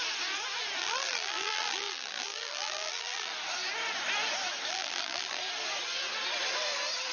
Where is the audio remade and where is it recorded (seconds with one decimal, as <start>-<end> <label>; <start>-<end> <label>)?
0.0-0.8 recorded; 0.8-3.3 remade; 3.3-4.7 recorded; 4.7-5.4 remade; 5.4-7.1 recorded